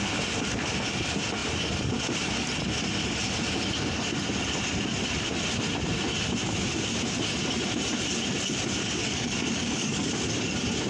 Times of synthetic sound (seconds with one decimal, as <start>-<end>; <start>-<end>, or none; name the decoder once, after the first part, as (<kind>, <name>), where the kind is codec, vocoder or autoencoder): 8.8-10.1 (codec, DAC)